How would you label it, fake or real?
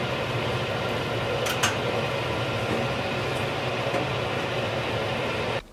real